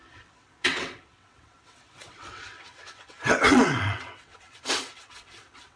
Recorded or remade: remade